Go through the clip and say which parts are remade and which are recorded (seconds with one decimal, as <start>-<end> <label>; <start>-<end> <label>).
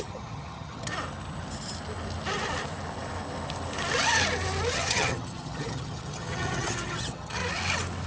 0.0-0.9 remade; 0.9-4.7 recorded; 4.7-7.4 remade; 7.4-8.1 recorded